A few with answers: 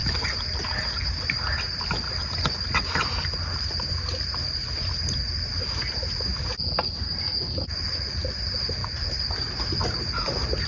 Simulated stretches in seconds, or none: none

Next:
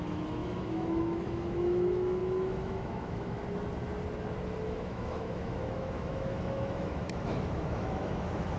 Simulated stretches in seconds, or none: 0.0-3.4 (autoencoder, DAC-VAE); 4.6-8.6

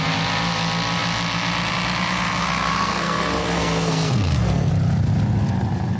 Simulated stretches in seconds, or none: 2.4-4.7 (codec, SNAC)

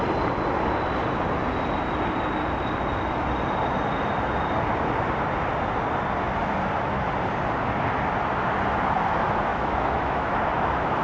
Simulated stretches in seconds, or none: 9.5-10.4 (autoencoder, DAC-VAE)

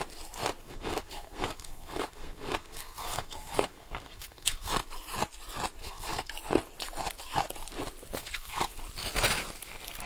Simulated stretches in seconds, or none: 0.6-4.7 (codec, SNAC); 5.8-6.3; 8.2-8.8

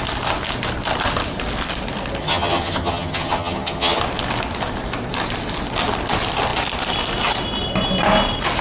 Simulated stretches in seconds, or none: 2.2-4.0 (vocoder, HiFi-GAN)

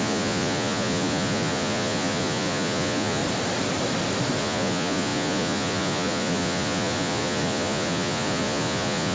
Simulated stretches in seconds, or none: 0.0-3.2 (vocoder, Vocos); 4.4-9.1